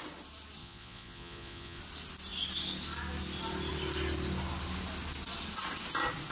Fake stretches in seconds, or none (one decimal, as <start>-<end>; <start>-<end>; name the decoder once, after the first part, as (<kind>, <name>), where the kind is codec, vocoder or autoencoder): 0.6-1.8 (vocoder, Vocos)